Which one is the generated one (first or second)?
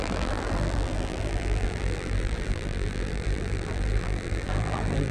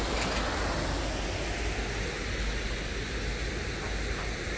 first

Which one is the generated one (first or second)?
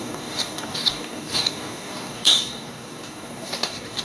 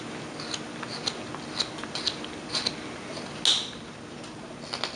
first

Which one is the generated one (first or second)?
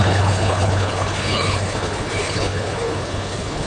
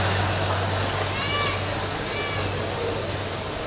first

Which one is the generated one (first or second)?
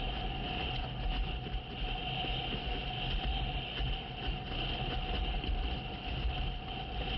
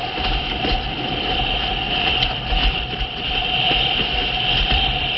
second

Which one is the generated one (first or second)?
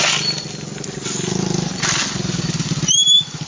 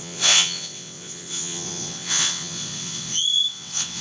second